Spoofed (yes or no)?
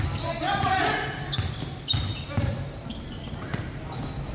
no